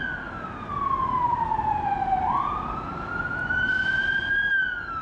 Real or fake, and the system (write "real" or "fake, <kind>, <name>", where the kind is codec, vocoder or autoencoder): real